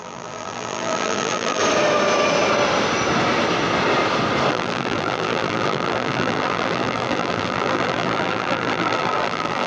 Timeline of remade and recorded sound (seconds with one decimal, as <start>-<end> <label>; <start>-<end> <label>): 0.0-1.6 remade; 1.6-4.5 recorded; 4.5-9.7 remade